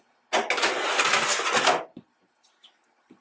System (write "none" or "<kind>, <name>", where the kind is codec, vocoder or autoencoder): none